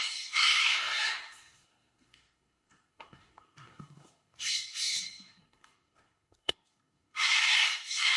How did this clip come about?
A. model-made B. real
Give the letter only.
A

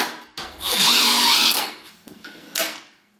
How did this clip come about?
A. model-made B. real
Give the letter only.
A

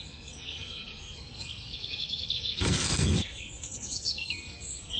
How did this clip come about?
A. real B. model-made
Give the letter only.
B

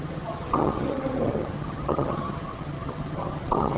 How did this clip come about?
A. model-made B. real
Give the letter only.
A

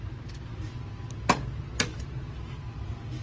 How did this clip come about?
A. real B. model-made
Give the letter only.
A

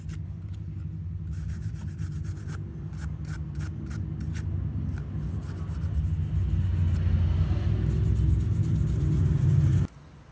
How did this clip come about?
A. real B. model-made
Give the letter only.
A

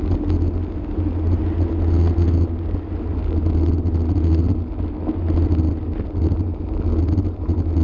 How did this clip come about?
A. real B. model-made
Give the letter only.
A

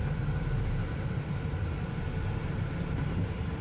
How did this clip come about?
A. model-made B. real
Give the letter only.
B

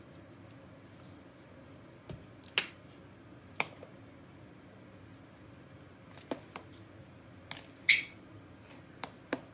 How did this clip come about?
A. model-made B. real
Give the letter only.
B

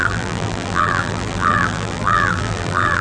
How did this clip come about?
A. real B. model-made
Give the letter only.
B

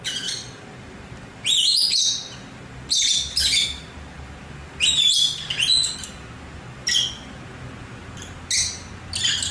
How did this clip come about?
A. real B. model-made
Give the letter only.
A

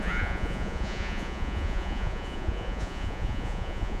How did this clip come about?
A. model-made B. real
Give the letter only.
A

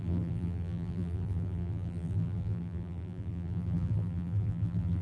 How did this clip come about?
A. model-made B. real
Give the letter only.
A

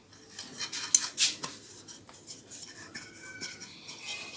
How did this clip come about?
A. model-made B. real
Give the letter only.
B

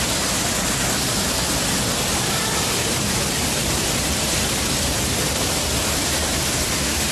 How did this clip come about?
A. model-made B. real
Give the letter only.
B